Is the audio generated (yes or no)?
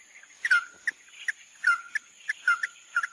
no